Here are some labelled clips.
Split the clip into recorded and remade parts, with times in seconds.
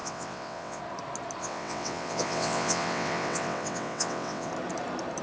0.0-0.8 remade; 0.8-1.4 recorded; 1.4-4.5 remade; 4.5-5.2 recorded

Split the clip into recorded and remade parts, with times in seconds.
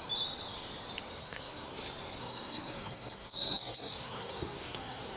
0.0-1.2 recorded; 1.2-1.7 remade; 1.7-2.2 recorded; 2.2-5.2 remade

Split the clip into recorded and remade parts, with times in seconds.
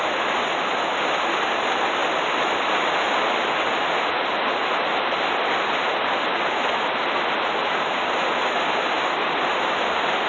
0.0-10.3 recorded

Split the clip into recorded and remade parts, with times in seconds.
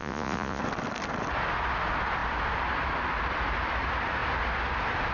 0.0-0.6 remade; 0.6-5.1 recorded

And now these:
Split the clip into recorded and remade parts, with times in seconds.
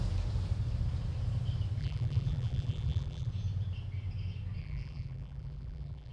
0.0-1.8 recorded; 1.8-3.3 remade; 3.3-4.6 recorded; 4.6-6.1 remade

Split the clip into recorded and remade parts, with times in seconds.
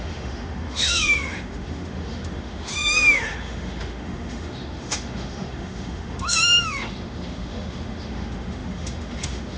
0.0-9.6 remade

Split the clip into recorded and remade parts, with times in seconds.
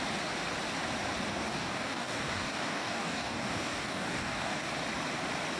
0.0-1.3 recorded; 1.3-4.7 remade; 4.7-5.6 recorded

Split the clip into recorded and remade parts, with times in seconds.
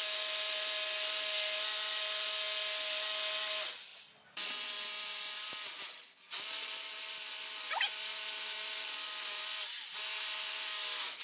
0.0-11.2 recorded